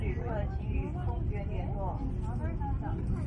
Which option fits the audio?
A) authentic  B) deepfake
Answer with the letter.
A